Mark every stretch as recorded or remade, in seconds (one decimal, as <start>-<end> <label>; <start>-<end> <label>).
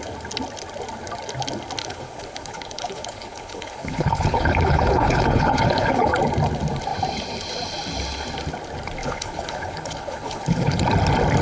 0.0-1.8 recorded; 1.8-6.1 remade; 6.1-9.0 recorded; 9.0-10.8 remade; 10.8-11.4 recorded